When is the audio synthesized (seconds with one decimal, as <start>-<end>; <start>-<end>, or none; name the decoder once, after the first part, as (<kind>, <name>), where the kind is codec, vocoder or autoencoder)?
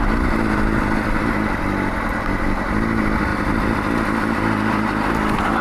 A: none